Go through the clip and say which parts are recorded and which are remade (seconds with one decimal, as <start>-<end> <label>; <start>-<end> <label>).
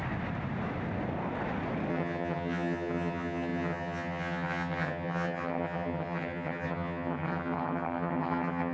0.0-1.9 recorded; 1.9-8.7 remade